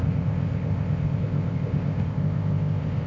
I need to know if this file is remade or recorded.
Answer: remade